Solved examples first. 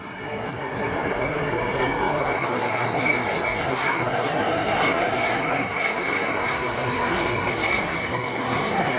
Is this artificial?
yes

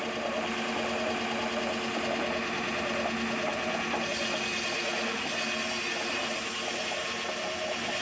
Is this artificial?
no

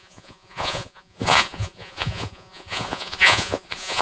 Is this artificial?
yes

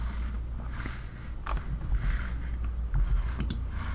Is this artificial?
no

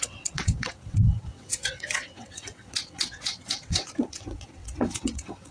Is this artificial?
yes